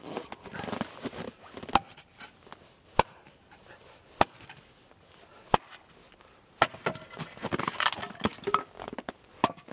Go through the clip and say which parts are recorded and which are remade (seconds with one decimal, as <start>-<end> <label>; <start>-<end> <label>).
0.0-8.3 recorded; 8.3-9.7 remade